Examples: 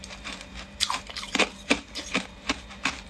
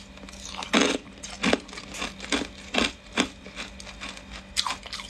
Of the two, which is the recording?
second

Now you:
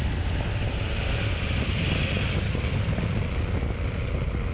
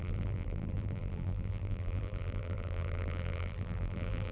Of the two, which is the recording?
first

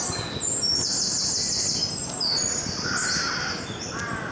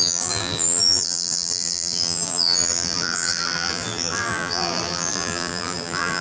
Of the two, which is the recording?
first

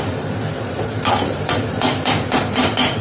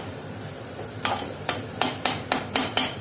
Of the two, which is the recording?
first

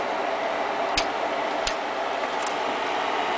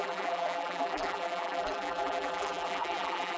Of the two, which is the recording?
first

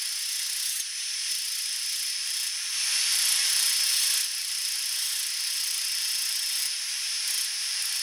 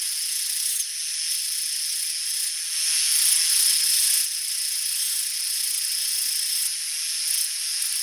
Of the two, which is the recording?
second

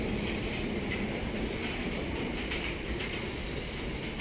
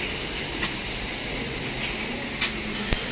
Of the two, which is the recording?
second